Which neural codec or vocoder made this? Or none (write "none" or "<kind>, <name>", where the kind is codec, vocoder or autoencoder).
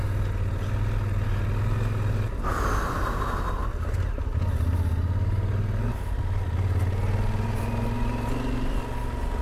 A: none